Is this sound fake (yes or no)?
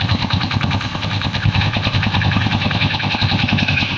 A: yes